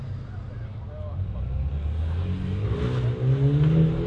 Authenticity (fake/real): real